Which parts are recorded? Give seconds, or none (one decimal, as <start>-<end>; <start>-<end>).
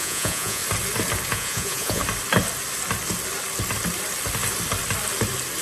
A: 0.6-1.3; 2.0-5.6